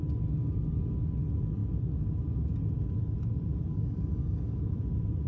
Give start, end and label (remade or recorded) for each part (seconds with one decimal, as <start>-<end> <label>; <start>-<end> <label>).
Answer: 0.0-3.7 recorded; 3.7-4.6 remade; 4.6-5.3 recorded